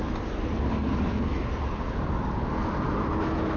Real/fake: real